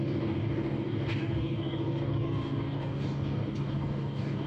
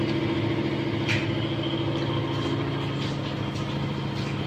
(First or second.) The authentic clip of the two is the second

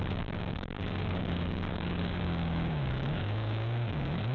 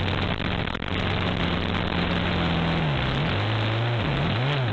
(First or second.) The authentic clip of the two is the second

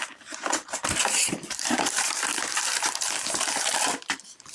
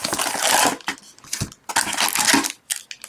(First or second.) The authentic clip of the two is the second